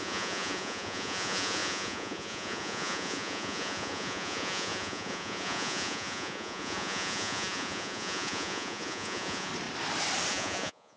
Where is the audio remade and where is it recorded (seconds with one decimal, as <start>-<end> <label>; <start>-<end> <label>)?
0.0-9.5 remade; 9.5-10.3 recorded; 10.3-11.0 remade